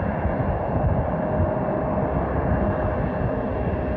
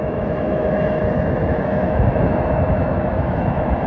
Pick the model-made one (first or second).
second